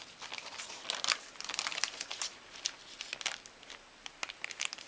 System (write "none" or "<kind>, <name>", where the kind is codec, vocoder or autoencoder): none